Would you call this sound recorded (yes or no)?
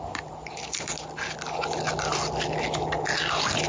yes